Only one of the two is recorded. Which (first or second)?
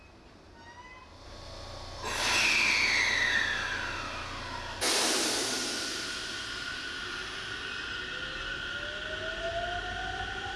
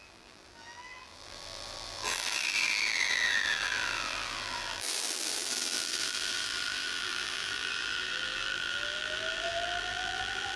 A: first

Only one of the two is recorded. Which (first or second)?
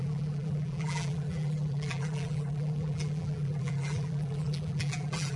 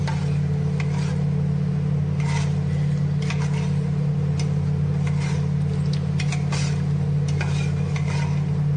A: second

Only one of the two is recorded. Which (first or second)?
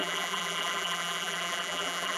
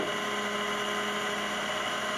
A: second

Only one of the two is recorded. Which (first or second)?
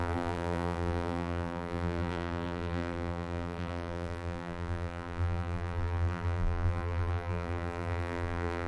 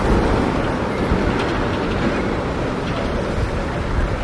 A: second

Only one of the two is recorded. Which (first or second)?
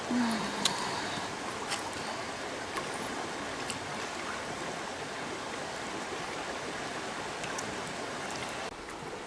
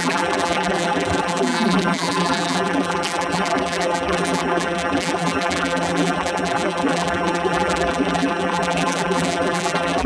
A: first